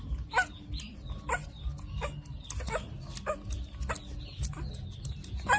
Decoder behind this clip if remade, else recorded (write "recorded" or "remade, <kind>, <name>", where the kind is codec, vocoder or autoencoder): recorded